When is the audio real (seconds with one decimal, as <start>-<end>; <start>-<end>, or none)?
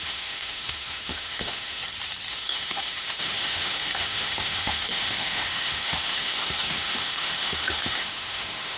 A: 1.8-2.3